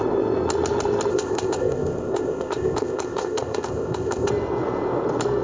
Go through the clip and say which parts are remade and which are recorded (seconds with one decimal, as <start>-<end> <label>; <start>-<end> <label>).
0.0-1.1 recorded; 1.1-4.3 remade; 4.3-5.4 recorded